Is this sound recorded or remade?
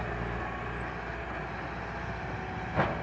recorded